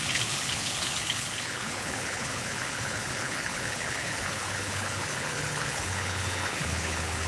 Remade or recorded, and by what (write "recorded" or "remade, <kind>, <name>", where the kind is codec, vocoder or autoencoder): remade, codec, HILCodec